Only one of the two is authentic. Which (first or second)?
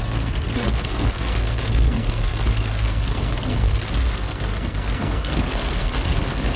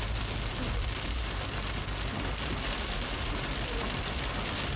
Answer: second